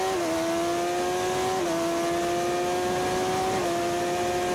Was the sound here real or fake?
real